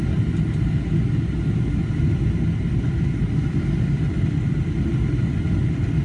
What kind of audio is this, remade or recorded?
recorded